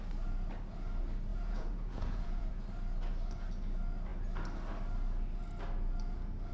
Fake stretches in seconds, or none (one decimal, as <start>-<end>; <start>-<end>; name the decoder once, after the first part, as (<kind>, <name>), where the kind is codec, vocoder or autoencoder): 1.3-2.5 (vocoder, Vocos)